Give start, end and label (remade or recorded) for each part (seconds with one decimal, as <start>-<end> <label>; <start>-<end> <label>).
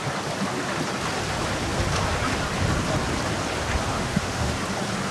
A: 0.0-3.9 recorded; 3.9-4.6 remade; 4.6-5.1 recorded